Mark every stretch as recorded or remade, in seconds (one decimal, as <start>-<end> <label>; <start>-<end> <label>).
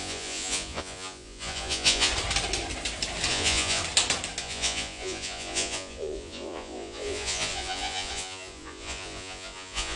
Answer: 0.0-2.1 remade; 2.1-3.3 recorded; 3.3-3.8 remade; 3.8-4.4 recorded; 4.4-10.0 remade